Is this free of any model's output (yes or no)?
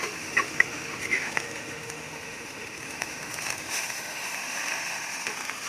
no